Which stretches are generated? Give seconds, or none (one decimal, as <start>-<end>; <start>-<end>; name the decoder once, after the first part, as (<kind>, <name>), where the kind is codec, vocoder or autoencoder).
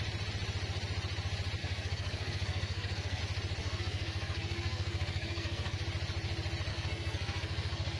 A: 1.6-3.2 (codec, SNAC); 3.6-5.8; 6.7-8.0